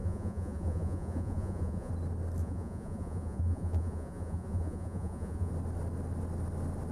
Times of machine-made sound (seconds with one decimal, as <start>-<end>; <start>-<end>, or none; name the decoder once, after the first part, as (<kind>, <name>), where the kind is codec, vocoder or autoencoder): 0.0-1.9 (vocoder, Vocos); 2.4-5.5